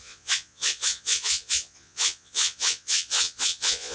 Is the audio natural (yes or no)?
no